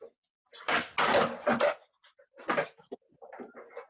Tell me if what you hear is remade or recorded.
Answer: recorded